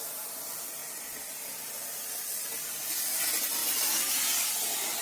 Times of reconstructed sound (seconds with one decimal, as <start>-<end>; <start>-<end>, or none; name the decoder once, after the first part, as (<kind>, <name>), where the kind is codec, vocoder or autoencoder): none